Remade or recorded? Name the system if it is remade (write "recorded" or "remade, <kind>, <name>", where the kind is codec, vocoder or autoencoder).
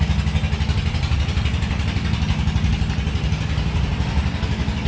recorded